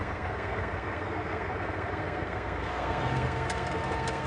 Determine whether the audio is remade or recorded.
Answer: remade